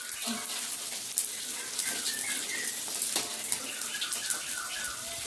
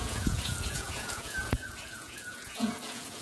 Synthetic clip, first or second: second